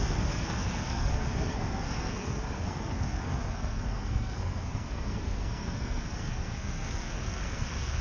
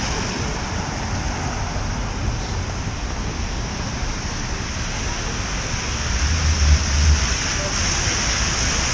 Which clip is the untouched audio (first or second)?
second